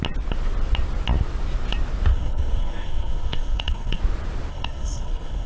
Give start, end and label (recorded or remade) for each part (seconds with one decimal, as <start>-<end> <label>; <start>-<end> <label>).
0.0-2.1 recorded; 2.1-4.0 remade; 4.0-4.5 recorded; 4.5-5.5 remade